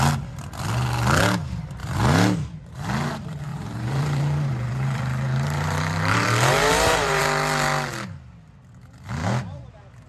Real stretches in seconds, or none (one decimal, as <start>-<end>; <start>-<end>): 0.0-3.5; 7.2-10.1